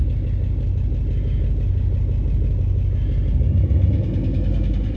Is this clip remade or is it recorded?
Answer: recorded